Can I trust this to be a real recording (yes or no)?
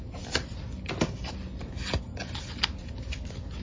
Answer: yes